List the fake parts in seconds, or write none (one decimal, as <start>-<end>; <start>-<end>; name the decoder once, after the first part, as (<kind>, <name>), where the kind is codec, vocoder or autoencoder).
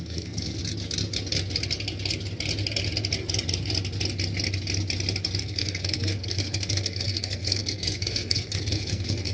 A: 0.0-0.6 (codec, SNAC); 5.4-9.3